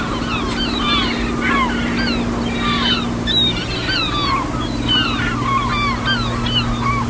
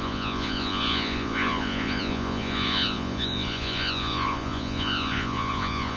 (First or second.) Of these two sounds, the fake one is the second